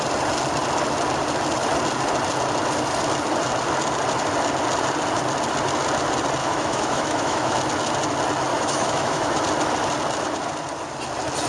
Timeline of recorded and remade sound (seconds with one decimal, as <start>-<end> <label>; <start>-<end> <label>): 0.0-6.4 recorded; 6.4-7.6 remade; 7.6-8.5 recorded; 8.5-9.4 remade; 9.4-11.5 recorded